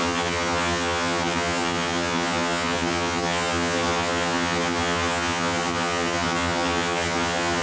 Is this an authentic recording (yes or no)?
no